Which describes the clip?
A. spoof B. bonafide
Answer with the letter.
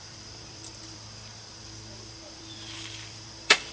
A